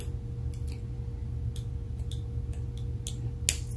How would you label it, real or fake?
real